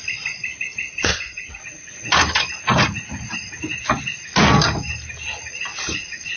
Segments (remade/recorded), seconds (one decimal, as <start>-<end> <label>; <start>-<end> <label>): 0.0-1.1 recorded; 1.1-1.9 remade; 1.9-5.7 recorded; 5.7-6.4 remade

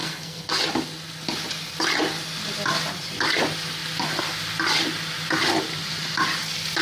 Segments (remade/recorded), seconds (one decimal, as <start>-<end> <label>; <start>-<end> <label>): 0.0-0.6 remade; 0.6-6.8 recorded

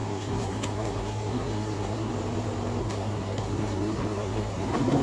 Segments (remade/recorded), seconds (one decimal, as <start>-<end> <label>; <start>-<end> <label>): 0.0-2.1 remade; 2.1-2.8 recorded; 2.8-5.0 remade

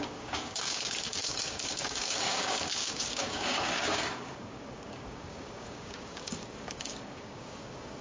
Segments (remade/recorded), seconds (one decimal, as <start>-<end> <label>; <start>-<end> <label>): 0.0-8.0 remade